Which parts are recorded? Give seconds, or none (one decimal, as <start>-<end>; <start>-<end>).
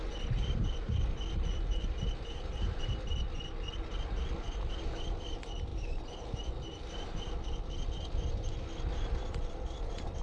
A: 0.0-5.7; 7.9-10.2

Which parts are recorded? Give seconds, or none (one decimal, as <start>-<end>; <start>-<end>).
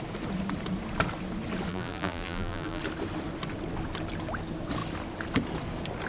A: 0.0-1.7; 2.8-6.1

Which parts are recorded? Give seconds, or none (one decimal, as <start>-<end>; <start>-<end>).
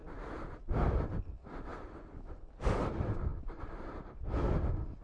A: 0.0-0.9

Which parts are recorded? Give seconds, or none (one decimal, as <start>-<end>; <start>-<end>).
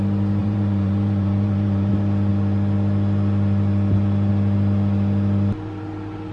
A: 0.0-0.4; 1.9-6.3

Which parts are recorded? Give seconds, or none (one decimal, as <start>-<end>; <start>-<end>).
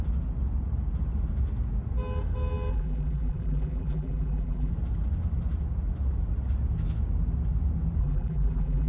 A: 0.0-2.7; 4.7-8.0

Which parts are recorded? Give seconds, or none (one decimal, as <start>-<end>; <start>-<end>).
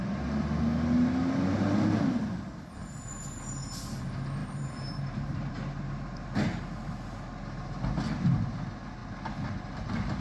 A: 0.0-4.4; 5.5-6.5; 7.1-10.2